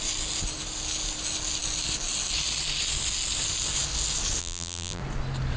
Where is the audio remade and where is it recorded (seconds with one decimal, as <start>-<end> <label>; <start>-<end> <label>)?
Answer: 0.0-4.4 recorded; 4.4-5.0 remade; 5.0-5.6 recorded